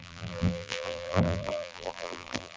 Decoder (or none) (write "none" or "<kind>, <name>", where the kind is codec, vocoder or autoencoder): vocoder, BigVGAN v2